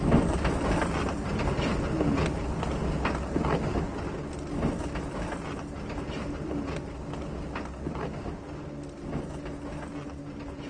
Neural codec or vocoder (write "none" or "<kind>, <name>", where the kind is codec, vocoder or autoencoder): none